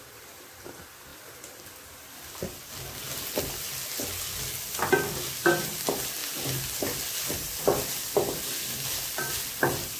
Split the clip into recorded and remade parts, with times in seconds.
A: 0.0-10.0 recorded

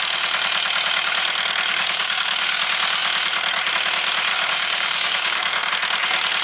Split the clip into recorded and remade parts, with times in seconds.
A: 0.0-1.7 recorded; 1.7-2.6 remade; 2.6-4.3 recorded; 4.3-5.7 remade; 5.7-6.4 recorded